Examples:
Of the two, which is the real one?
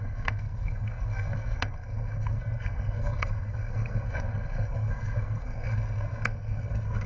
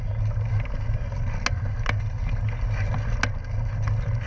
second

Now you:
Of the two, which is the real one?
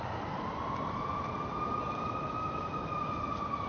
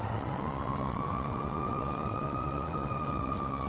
first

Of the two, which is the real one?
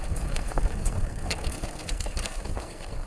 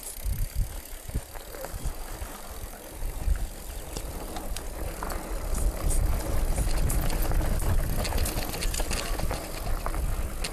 second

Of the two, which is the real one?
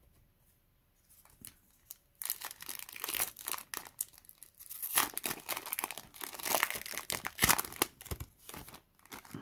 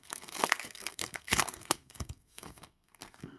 first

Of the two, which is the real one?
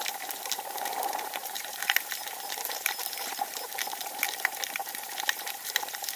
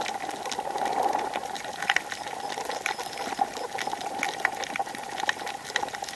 second